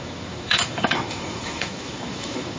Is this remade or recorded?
remade